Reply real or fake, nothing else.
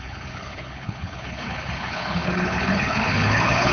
fake